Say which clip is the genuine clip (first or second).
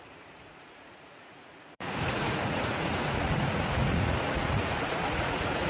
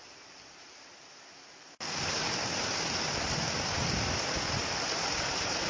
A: second